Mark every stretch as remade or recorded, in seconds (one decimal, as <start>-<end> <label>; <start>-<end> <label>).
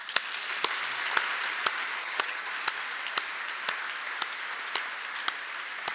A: 0.0-2.0 recorded; 2.0-2.5 remade; 2.5-5.9 recorded